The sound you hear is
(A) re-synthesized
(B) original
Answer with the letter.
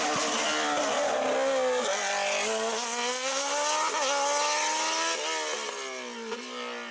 B